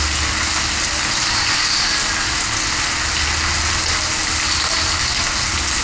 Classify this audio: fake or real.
real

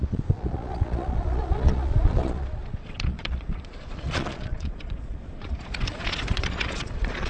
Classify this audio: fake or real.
fake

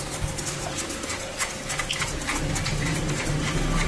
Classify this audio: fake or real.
real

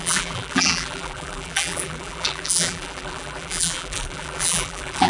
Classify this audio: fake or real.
fake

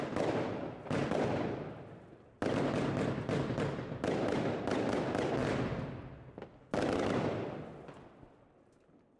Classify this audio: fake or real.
real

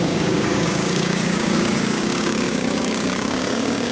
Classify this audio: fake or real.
fake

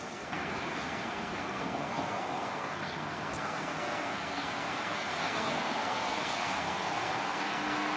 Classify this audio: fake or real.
fake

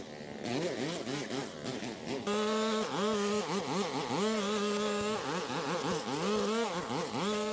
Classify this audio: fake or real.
real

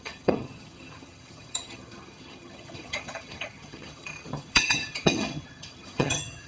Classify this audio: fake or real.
fake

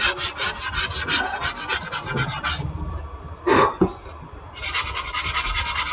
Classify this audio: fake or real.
real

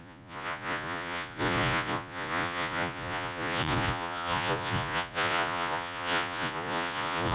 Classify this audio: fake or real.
fake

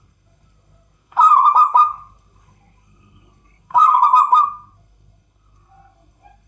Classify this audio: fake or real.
fake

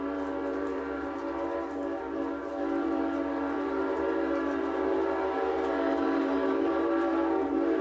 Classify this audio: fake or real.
fake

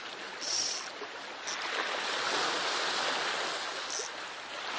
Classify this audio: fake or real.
real